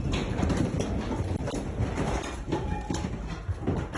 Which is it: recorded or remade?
recorded